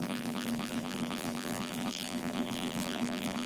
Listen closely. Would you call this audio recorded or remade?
remade